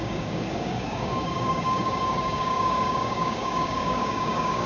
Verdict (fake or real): fake